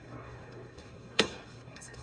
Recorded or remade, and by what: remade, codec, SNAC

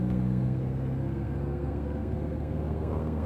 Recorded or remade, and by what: remade, codec, SNAC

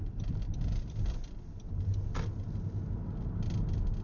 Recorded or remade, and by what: recorded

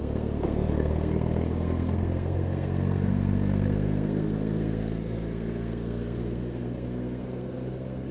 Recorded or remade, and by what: remade, codec, SNAC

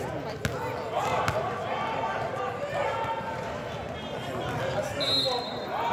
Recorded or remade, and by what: recorded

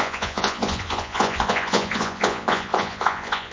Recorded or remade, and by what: remade, vocoder, Vocos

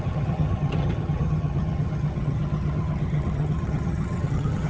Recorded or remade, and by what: remade, vocoder, HiFi-GAN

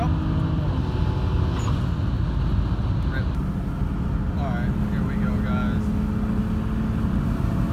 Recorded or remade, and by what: recorded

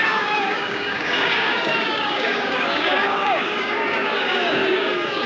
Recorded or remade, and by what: remade, codec, DAC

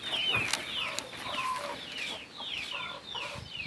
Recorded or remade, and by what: recorded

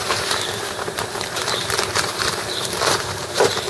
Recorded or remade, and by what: remade, vocoder, BigVGAN v2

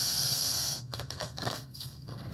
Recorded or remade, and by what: remade, codec, SNAC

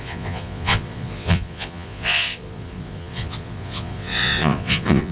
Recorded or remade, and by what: remade, vocoder, Vocos